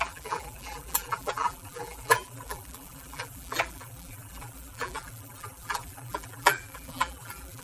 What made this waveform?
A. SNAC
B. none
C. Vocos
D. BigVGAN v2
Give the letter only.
D